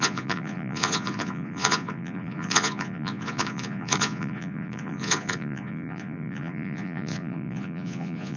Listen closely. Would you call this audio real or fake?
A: fake